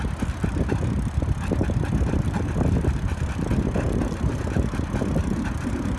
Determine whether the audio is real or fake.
real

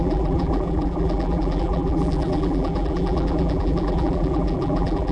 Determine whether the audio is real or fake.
fake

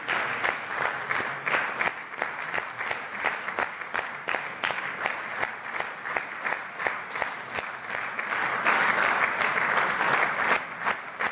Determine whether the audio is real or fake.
real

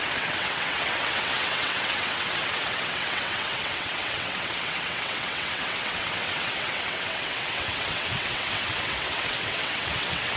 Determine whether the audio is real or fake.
fake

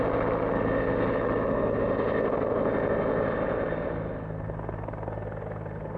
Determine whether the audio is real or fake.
real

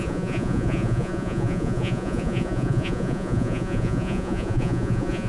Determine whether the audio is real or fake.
fake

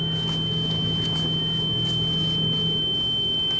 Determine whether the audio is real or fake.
real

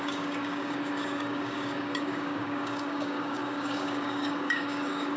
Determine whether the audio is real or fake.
fake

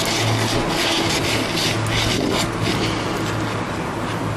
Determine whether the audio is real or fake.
real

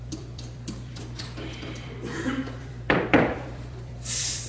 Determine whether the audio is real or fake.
fake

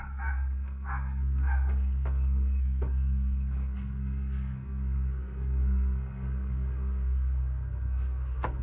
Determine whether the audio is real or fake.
fake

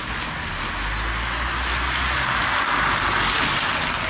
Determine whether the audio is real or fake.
real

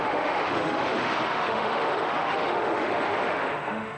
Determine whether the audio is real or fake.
fake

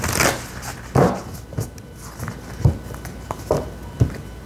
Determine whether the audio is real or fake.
real